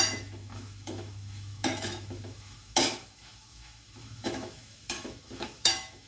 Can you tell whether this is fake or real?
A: fake